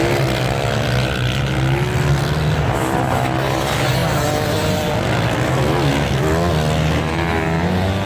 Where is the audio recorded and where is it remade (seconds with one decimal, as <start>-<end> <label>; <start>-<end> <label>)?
0.0-8.1 recorded